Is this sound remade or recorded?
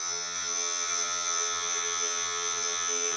remade